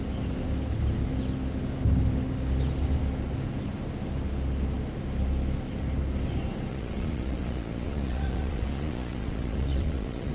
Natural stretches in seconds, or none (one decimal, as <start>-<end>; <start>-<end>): 0.0-6.7